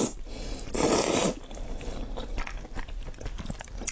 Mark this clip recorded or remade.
recorded